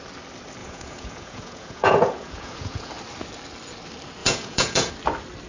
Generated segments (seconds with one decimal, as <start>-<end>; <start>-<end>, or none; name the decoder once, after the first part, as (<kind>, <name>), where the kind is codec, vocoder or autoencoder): 0.6-2.9 (vocoder, Vocos); 4.2-4.9